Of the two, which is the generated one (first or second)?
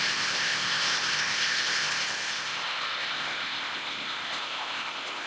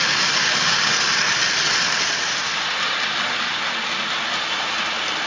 first